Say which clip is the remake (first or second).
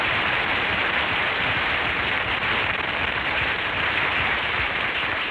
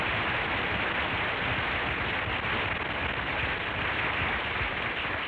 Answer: first